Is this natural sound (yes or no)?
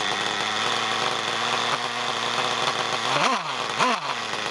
yes